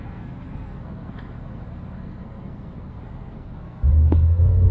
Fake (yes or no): yes